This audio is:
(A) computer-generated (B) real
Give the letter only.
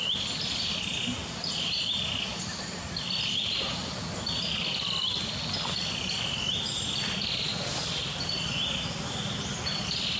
B